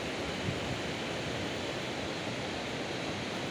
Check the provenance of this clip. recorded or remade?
recorded